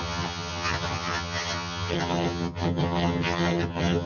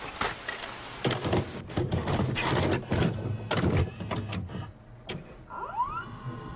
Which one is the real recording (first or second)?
second